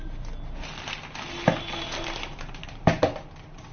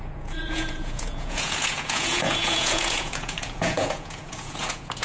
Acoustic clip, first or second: first